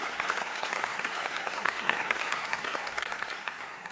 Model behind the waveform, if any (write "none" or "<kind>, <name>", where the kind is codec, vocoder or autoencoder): codec, SNAC